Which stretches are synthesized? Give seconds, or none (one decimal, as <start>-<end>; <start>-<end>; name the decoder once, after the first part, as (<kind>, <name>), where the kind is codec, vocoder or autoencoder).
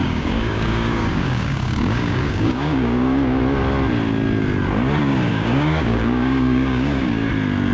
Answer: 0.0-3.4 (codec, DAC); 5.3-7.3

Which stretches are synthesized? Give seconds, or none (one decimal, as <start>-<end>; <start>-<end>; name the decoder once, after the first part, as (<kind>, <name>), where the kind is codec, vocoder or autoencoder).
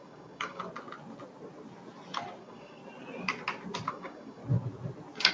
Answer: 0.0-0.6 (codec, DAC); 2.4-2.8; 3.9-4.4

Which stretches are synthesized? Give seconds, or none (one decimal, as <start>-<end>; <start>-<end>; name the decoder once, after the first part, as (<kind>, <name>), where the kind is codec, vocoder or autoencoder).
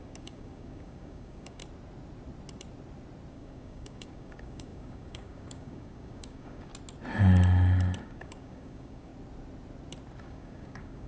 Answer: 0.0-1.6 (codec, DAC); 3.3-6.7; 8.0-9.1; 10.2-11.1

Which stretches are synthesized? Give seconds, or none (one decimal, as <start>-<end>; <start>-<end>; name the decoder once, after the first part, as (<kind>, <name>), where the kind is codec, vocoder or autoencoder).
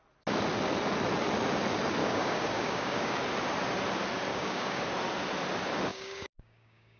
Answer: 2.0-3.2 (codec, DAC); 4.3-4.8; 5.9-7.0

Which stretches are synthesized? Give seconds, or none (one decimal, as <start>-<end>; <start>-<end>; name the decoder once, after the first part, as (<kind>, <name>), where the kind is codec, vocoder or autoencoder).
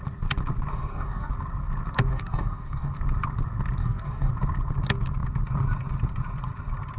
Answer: 0.7-1.3 (codec, DAC); 2.1-2.9; 3.8-4.3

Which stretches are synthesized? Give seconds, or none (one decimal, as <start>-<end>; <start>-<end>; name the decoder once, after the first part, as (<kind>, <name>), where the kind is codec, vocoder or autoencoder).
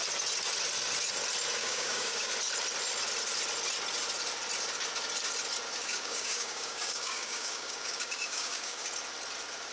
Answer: 1.6-2.3 (codec, DAC); 5.8-8.9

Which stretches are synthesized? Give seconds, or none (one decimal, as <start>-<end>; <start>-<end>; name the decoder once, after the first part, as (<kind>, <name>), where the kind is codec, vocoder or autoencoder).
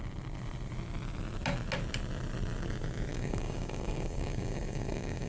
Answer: 3.1-5.3 (codec, DAC)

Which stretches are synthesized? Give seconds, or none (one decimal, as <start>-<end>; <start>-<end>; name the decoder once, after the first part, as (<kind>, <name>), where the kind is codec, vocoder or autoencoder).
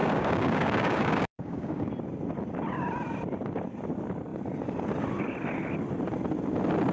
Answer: 0.0-1.9 (codec, DAC)